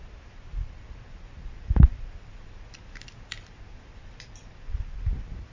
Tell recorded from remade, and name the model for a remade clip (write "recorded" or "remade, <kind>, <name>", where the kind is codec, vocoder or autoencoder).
recorded